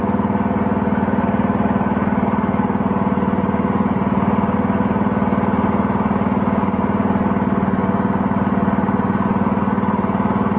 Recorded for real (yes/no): yes